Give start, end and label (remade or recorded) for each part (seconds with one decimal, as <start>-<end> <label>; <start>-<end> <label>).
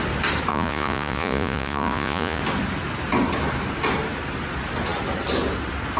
0.0-0.5 recorded; 0.5-2.4 remade; 2.4-6.0 recorded